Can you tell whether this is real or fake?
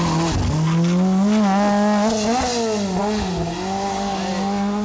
real